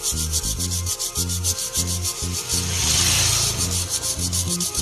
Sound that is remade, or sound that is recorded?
recorded